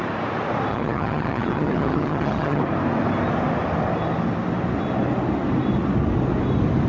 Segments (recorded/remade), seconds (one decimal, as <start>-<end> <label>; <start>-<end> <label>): 0.0-0.7 recorded; 0.7-2.6 remade; 2.6-6.9 recorded